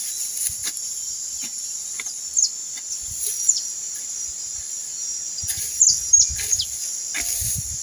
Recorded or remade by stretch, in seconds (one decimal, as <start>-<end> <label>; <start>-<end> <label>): 0.0-0.6 recorded; 0.6-1.8 remade; 1.8-7.8 recorded